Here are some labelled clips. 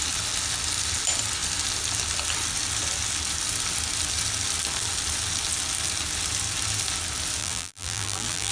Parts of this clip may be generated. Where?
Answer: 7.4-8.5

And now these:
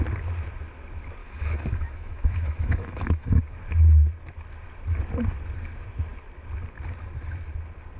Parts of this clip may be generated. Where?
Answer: 1.2-3.4

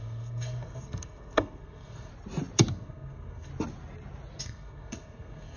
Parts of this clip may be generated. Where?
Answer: 0.0-2.1; 2.7-3.5; 4.4-5.6

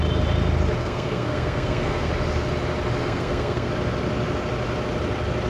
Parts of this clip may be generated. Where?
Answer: 0.8-2.1; 3.0-3.7

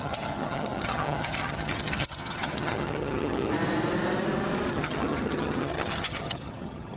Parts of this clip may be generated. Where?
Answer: 0.0-3.5; 4.7-7.0

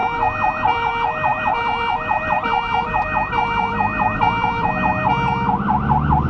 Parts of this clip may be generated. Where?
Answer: 0.0-0.9; 1.3-4.7

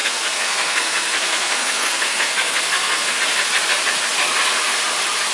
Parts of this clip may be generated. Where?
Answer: 0.0-3.2

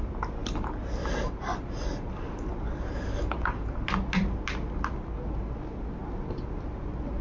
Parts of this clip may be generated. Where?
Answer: none